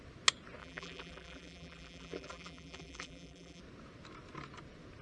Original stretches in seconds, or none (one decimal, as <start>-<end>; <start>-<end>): 0.0-0.6; 3.6-5.0